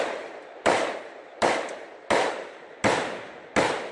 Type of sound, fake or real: real